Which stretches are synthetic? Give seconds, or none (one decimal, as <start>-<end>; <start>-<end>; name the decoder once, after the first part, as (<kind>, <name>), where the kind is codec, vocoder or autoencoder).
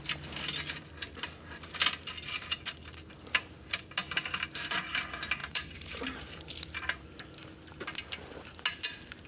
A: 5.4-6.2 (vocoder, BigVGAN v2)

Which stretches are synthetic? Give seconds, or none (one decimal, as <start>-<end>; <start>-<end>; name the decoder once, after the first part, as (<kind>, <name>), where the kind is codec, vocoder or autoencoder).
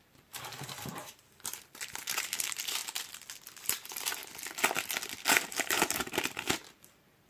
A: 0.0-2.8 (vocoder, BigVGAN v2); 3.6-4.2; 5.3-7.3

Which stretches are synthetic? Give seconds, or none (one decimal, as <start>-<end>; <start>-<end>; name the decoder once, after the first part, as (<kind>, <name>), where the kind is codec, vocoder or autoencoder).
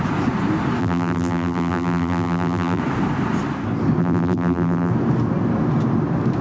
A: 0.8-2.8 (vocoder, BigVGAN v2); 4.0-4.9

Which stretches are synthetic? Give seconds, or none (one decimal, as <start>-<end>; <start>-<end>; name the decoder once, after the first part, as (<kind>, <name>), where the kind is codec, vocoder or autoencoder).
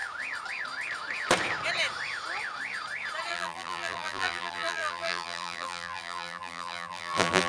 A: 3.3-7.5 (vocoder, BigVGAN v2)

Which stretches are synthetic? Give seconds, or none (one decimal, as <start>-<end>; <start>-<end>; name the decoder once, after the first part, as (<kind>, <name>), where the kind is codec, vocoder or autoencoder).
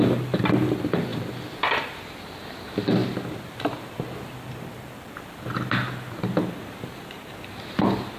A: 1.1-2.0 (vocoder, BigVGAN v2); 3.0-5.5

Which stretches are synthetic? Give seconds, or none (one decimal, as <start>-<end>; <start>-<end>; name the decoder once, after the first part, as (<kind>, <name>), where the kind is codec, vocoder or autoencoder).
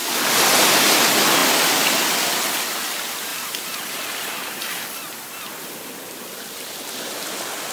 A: 3.3-6.2 (vocoder, BigVGAN v2)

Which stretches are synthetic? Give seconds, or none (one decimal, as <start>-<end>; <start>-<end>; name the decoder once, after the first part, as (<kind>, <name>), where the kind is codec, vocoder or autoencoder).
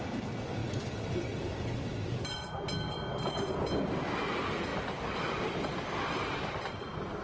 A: 0.6-1.4 (vocoder, BigVGAN v2); 4.7-7.2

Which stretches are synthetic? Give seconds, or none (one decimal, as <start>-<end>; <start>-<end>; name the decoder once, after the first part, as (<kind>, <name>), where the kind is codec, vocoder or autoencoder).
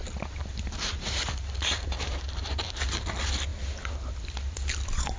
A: 0.0-3.0 (vocoder, BigVGAN v2)